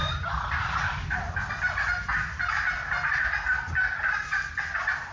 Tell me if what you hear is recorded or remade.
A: recorded